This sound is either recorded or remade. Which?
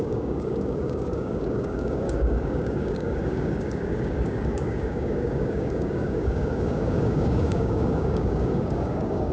remade